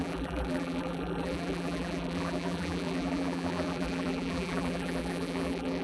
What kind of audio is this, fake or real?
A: fake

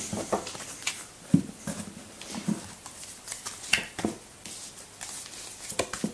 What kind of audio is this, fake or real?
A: real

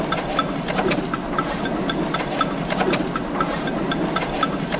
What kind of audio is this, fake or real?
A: real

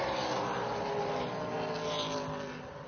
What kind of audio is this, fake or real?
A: real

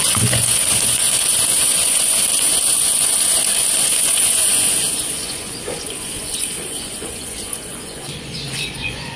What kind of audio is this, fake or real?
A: fake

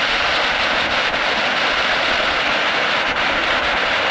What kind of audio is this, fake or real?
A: real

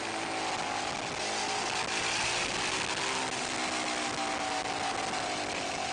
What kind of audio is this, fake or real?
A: real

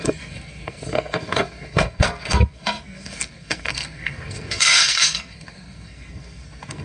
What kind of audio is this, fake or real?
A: fake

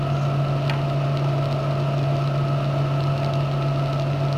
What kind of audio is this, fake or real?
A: real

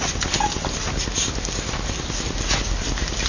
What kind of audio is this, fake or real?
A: real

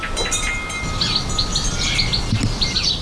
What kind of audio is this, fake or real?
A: real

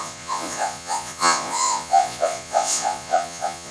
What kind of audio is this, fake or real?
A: fake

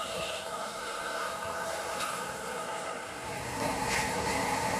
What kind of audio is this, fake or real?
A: fake